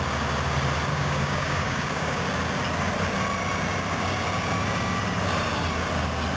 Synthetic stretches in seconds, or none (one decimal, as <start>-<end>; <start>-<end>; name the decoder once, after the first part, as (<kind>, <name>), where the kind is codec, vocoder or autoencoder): 0.9-2.2 (codec, DAC)